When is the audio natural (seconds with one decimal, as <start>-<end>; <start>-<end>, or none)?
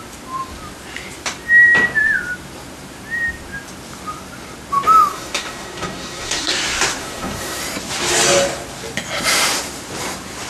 0.0-5.1; 6.5-7.0; 7.6-10.5